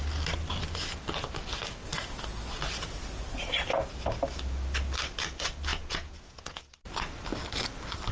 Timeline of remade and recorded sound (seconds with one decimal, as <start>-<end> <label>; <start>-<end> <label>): 0.0-5.7 recorded; 5.7-6.6 remade; 6.6-8.1 recorded